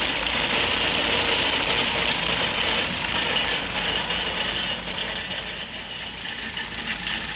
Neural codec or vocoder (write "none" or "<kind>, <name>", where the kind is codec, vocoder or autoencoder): none